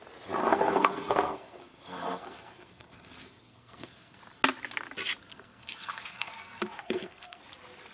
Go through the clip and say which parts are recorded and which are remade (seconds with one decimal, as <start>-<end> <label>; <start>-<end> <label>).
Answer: 0.0-0.4 recorded; 0.4-4.2 remade; 4.2-5.3 recorded; 5.3-7.4 remade; 7.4-7.9 recorded